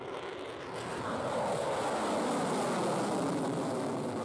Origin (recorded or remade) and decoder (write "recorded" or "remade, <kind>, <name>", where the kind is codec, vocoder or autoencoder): recorded